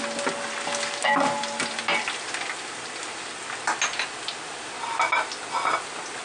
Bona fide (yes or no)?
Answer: yes